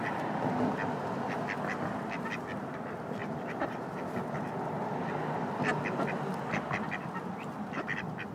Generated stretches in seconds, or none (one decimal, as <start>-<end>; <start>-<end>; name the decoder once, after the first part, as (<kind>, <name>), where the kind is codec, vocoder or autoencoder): 3.2-4.1 (vocoder, BigVGAN v2)